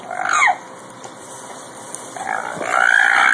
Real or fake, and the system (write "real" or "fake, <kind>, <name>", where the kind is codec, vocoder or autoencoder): real